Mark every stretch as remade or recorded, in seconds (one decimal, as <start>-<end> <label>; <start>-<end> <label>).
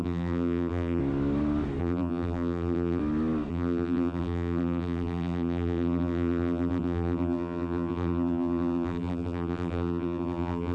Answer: 0.0-1.0 remade; 1.0-1.8 recorded; 1.8-3.0 remade; 3.0-3.5 recorded; 3.5-10.7 remade